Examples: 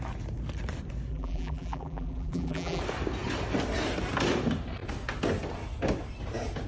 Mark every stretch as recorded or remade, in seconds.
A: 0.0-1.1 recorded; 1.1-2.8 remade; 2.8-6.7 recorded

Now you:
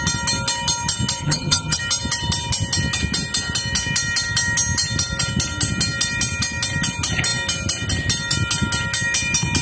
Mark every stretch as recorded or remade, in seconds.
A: 0.0-1.2 recorded; 1.2-1.8 remade; 1.8-9.6 recorded